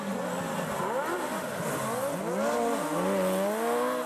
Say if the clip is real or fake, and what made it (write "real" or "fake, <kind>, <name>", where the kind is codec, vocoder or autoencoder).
real